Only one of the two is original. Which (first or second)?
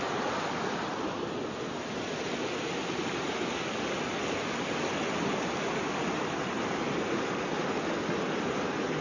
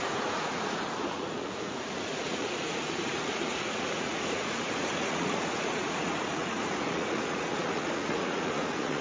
first